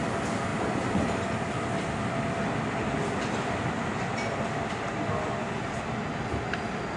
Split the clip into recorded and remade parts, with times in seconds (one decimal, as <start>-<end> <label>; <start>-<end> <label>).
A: 0.0-7.0 recorded